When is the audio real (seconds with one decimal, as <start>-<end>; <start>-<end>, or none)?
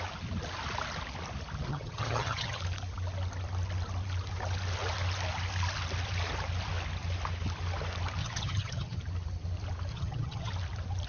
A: 0.0-1.7; 2.6-8.2; 9.0-9.9; 10.5-11.1